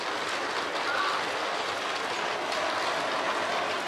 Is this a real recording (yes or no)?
yes